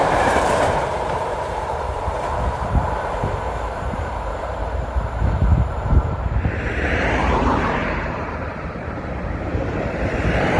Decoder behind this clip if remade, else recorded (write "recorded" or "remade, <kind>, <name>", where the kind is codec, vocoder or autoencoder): remade, vocoder, BigVGAN v2